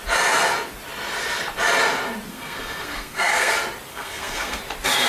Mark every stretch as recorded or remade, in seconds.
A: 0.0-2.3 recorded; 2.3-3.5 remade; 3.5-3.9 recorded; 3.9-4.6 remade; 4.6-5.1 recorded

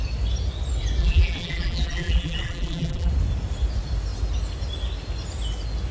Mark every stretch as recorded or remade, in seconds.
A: 0.0-1.0 recorded; 1.0-3.1 remade; 3.1-5.9 recorded

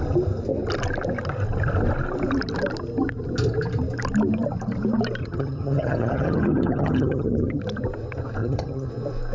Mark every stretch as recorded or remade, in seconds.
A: 0.0-5.2 recorded; 5.2-7.6 remade; 7.6-8.4 recorded; 8.4-8.9 remade; 8.9-9.3 recorded